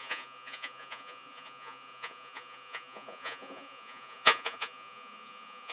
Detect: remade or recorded remade